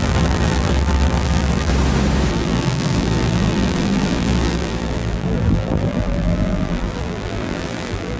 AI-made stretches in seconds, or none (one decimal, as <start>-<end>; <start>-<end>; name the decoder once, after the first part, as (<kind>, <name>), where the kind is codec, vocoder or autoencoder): 0.0-1.7 (vocoder, BigVGAN v2); 2.3-8.2